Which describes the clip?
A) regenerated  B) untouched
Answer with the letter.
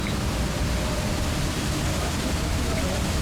B